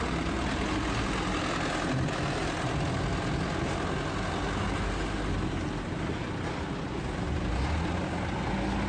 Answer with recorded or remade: recorded